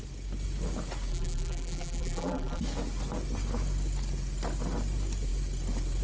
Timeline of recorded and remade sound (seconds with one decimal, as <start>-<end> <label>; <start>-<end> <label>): 0.0-1.1 recorded; 1.1-2.6 remade; 2.6-6.0 recorded